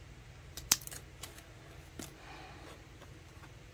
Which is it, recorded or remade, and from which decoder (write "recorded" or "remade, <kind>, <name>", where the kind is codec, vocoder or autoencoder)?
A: recorded